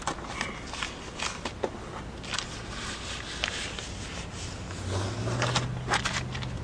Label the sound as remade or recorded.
recorded